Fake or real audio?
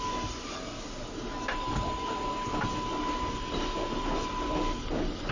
real